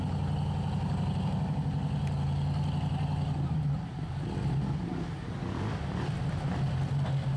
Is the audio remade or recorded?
recorded